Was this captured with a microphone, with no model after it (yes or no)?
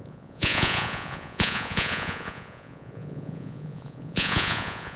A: no